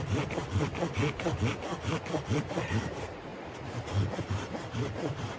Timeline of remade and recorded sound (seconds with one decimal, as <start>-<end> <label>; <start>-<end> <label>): 0.0-0.7 remade; 0.7-2.4 recorded; 2.4-3.3 remade; 3.3-4.2 recorded; 4.2-5.4 remade